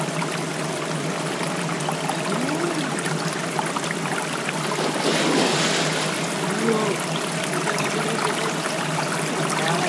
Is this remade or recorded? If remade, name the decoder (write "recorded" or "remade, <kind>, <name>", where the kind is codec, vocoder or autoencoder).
recorded